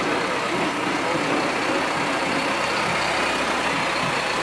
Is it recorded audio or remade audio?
recorded